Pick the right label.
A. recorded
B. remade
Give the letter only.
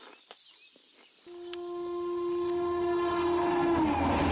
A